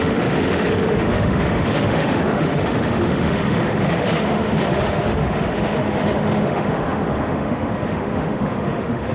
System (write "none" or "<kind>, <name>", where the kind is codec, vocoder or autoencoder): autoencoder, DAC-VAE